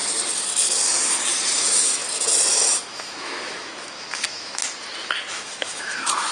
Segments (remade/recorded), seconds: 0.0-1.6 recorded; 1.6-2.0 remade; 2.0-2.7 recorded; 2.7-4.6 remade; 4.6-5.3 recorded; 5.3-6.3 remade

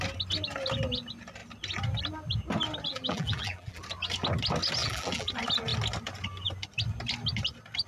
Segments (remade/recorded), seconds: 0.0-2.9 recorded; 2.9-3.8 remade; 3.8-4.8 recorded; 4.8-5.3 remade; 5.3-7.9 recorded